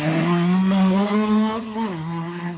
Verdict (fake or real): fake